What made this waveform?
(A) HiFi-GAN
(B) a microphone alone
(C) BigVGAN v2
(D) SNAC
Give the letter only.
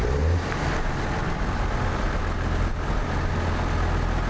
B